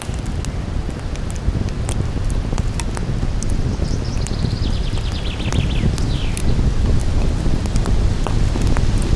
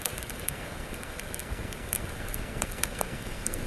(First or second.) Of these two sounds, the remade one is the second